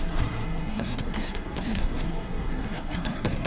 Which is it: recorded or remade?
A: remade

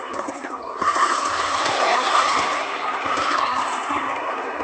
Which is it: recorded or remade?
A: remade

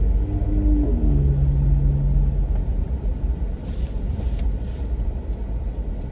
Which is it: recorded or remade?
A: recorded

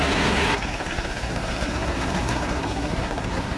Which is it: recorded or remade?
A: remade